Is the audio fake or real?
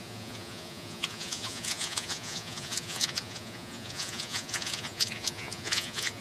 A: fake